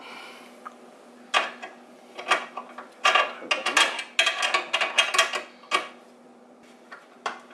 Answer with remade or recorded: recorded